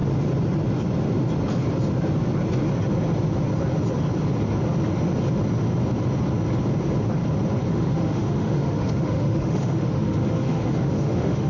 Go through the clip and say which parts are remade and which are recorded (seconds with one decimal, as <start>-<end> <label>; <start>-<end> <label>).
0.0-7.7 recorded; 7.7-11.5 remade